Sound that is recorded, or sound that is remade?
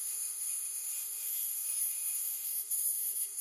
remade